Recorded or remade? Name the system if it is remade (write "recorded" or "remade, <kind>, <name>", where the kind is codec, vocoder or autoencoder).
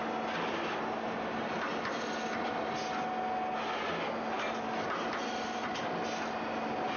recorded